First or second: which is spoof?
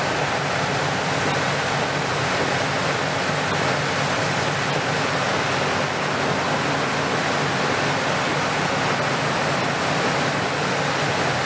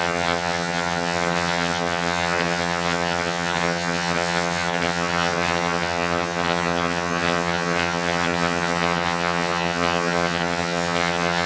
second